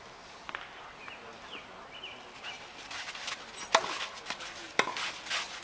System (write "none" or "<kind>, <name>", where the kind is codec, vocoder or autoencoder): none